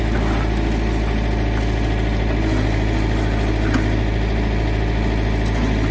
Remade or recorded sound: recorded